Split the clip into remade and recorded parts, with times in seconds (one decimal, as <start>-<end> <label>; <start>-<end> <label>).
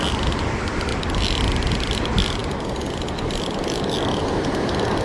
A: 0.0-5.0 recorded